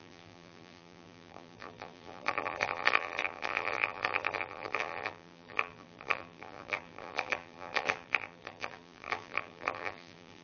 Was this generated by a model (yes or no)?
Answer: yes